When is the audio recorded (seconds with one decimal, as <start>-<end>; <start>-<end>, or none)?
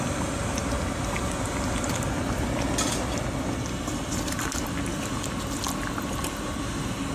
0.0-7.1